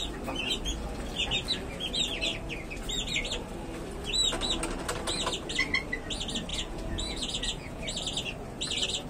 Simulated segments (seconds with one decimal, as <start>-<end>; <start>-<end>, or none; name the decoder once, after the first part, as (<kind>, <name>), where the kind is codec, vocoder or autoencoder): 6.5-7.8 (vocoder, Vocos)